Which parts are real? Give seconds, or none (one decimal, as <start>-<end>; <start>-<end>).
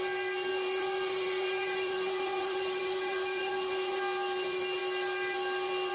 0.0-0.5; 4.0-5.9